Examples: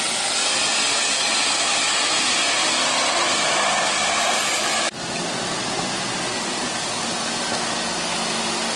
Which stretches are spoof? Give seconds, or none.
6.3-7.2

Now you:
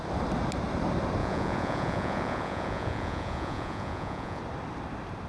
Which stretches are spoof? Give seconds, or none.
1.2-4.4